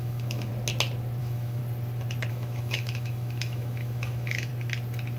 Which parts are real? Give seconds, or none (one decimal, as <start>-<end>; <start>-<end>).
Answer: 0.5-1.2; 1.6-2.3; 4.5-5.2